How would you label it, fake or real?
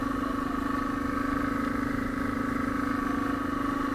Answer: real